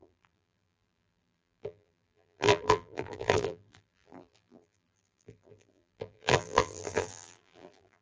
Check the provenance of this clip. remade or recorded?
remade